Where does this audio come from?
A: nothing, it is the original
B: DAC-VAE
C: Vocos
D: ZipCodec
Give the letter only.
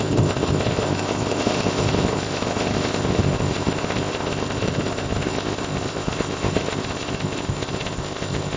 D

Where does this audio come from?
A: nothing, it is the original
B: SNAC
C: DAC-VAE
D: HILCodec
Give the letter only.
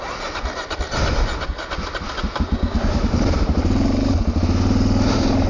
A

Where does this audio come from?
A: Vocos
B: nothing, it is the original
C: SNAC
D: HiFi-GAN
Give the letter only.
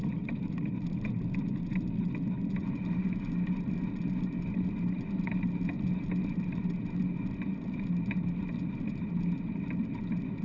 B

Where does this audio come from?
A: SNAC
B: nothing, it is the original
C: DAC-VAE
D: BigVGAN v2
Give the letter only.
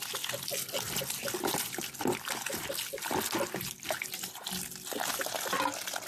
B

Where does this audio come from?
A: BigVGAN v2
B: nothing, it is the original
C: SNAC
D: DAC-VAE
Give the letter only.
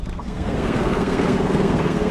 C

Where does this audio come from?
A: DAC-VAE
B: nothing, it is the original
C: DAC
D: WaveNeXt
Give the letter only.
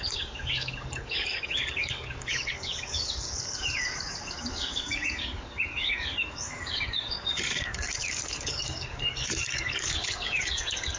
C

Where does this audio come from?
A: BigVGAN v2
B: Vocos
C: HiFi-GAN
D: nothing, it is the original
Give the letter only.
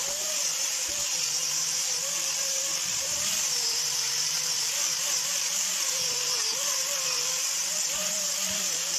A